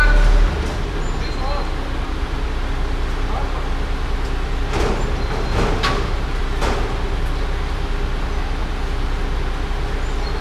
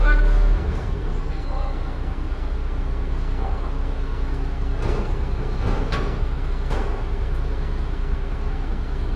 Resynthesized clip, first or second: second